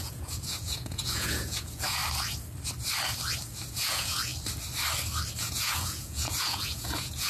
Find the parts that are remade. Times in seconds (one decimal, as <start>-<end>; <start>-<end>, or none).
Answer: 0.0-2.0; 3.7-4.3; 5.4-7.3